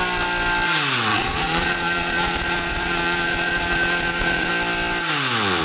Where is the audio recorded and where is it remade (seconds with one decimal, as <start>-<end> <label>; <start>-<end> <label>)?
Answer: 0.0-1.1 recorded; 1.1-4.5 remade; 4.5-5.6 recorded